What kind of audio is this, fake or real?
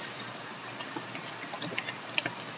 real